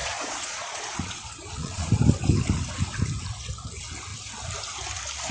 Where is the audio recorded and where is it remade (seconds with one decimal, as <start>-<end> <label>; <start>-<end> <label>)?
0.0-1.9 remade; 1.9-5.3 recorded